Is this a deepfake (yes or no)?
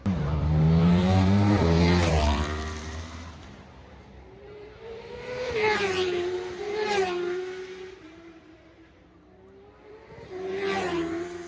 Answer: yes